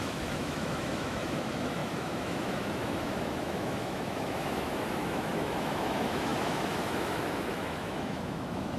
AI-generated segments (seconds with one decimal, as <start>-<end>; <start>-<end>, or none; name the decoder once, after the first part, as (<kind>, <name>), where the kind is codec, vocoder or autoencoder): 0.0-8.8 (autoencoder, DAC-VAE)